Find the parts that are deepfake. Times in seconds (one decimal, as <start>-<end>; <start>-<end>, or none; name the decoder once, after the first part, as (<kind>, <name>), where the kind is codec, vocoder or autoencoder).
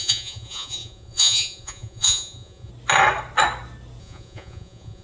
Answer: 0.0-2.7 (vocoder, Vocos); 4.0-5.0